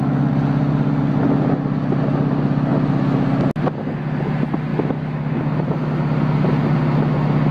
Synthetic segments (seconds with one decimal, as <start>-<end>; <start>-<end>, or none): 4.7-5.4